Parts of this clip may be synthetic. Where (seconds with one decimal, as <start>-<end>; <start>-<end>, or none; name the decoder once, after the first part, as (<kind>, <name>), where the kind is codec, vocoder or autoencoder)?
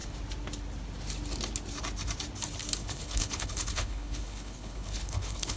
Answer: 2.8-5.6 (codec, HILCodec)